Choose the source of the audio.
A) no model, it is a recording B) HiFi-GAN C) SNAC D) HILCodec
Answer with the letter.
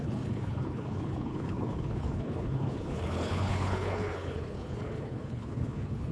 D